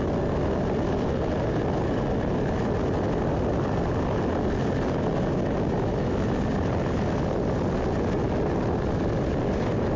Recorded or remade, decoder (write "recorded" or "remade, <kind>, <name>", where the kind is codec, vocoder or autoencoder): recorded